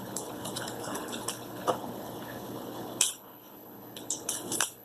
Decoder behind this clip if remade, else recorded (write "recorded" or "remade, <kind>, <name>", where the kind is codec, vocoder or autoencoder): remade, codec, HILCodec